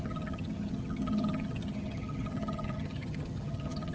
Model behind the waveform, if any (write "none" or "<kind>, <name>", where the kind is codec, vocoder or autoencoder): vocoder, HiFi-GAN